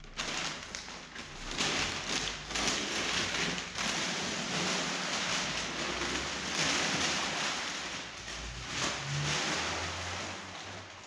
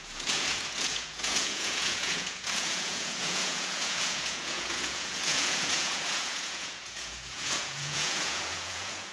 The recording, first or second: first